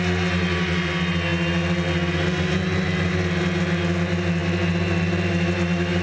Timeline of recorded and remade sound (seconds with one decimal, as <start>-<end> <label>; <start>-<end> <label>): 0.0-6.0 recorded